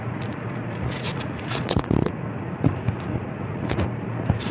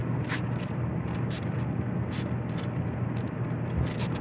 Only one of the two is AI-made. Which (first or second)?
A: first